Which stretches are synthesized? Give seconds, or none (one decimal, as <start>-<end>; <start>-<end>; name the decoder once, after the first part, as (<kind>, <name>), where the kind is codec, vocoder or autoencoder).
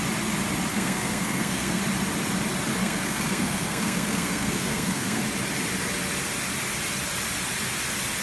0.7-1.8 (codec, SNAC); 2.8-5.2